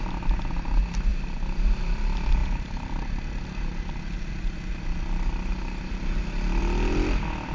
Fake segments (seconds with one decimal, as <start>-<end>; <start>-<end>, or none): none